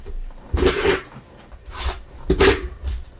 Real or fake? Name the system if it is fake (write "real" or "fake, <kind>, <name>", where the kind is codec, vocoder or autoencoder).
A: fake, vocoder, BigVGAN v2